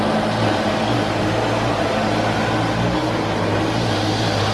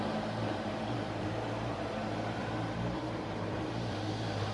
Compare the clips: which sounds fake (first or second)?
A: second